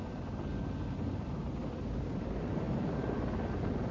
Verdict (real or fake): real